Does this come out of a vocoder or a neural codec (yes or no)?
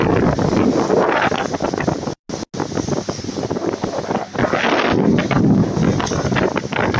no